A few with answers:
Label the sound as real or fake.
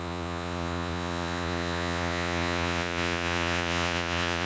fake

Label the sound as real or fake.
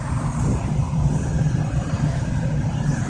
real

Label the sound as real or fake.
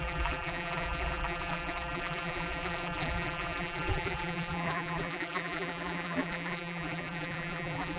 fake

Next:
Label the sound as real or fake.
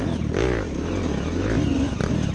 real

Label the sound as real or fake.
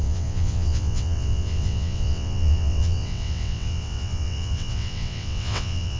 fake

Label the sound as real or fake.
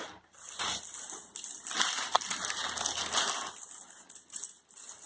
real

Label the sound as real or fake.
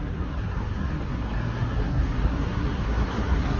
fake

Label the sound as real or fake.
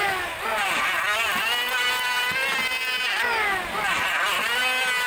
real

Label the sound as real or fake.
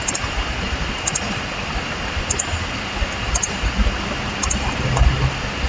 real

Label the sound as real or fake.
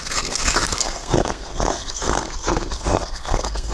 fake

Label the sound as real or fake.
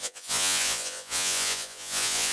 fake